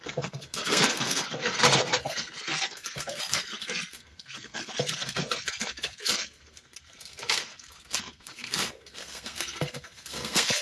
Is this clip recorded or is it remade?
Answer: remade